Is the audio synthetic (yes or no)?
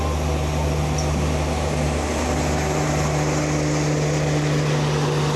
no